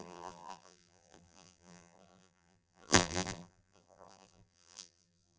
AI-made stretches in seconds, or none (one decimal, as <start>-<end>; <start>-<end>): 0.0-5.4